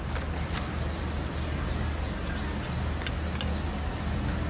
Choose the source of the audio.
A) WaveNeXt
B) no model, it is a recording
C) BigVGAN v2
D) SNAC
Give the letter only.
B